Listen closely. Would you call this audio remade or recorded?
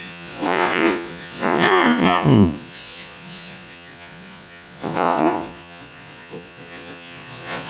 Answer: remade